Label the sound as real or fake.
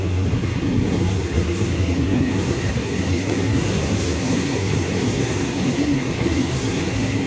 fake